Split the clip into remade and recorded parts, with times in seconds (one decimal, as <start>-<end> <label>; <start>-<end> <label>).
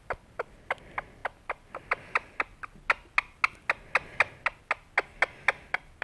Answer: 0.0-6.0 recorded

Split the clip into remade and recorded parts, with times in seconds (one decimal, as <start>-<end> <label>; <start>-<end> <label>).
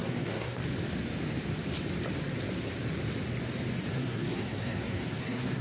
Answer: 0.0-0.6 remade; 0.6-3.9 recorded; 3.9-5.6 remade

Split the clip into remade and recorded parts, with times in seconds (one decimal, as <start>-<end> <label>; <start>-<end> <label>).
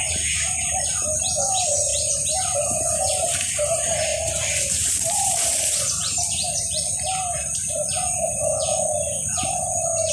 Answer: 0.0-4.1 remade; 4.1-4.9 recorded; 4.9-5.5 remade; 5.5-6.7 recorded; 6.7-10.1 remade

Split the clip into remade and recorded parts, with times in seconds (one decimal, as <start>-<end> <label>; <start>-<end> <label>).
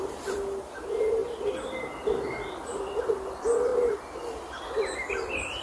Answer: 0.0-1.2 remade; 1.2-3.0 recorded; 3.0-3.7 remade; 3.7-5.1 recorded; 5.1-5.6 remade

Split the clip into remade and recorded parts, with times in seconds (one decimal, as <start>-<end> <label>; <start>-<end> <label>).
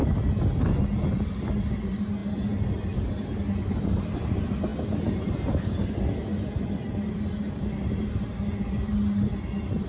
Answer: 0.0-9.9 recorded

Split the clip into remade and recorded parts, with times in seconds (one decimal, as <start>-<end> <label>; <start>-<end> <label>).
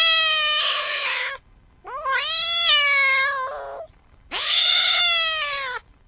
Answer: 0.0-0.6 recorded; 0.6-1.3 remade; 1.3-4.4 recorded; 4.4-5.0 remade; 5.0-6.1 recorded